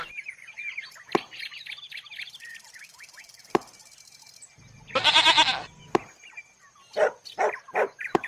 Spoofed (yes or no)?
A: no